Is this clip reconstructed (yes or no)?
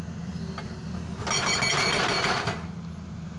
no